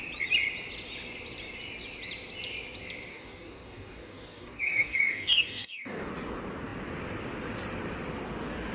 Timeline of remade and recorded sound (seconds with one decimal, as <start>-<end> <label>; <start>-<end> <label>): 0.0-3.1 recorded; 3.1-6.1 remade; 6.1-8.7 recorded